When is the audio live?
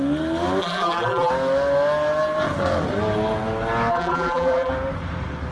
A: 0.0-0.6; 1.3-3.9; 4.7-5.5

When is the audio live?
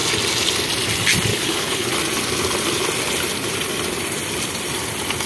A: 0.0-1.3; 1.9-5.3